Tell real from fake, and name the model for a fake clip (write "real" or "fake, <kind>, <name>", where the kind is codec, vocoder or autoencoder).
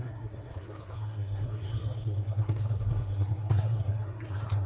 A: fake, codec, SNAC